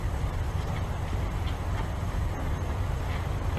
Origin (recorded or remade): remade